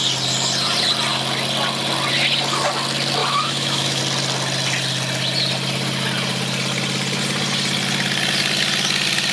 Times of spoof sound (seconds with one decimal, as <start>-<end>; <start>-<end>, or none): 3.2-4.0